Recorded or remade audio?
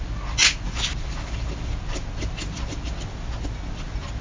recorded